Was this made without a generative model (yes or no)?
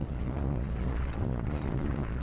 no